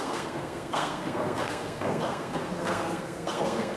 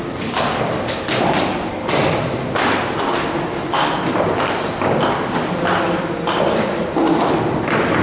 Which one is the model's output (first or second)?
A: first